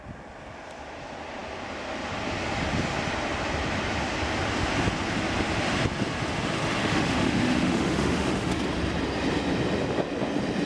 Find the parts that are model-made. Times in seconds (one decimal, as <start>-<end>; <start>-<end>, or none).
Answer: 6.8-8.5